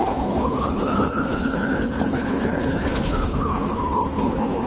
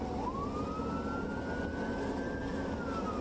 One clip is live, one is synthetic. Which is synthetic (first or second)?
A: first